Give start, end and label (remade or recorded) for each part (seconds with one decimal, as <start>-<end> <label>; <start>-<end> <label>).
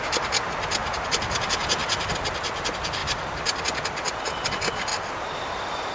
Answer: 0.0-0.8 recorded; 0.8-2.2 remade; 2.2-3.0 recorded; 3.0-4.2 remade; 4.2-4.9 recorded; 4.9-5.9 remade